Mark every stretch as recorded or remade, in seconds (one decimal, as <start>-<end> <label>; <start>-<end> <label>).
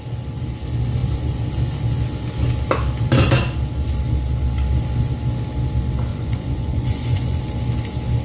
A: 0.0-6.1 recorded; 6.1-7.4 remade; 7.4-8.2 recorded